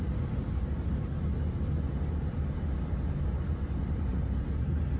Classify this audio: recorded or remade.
recorded